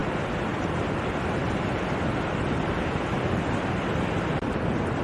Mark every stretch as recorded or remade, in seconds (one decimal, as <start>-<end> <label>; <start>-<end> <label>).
0.0-5.0 recorded